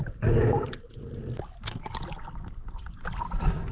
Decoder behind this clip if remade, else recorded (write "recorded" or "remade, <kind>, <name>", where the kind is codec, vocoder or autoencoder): recorded